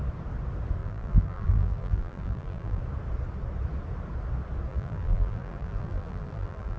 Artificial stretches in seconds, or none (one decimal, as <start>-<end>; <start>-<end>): 0.8-2.8; 4.7-6.8